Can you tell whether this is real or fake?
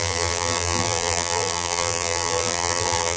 fake